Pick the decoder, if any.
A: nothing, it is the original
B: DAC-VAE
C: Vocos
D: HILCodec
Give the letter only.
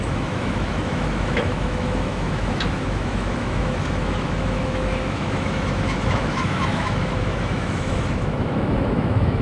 B